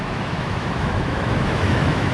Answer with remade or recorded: remade